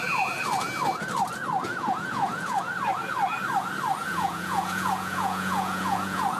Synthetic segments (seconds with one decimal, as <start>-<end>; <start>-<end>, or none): 1.6-2.6; 4.0-6.4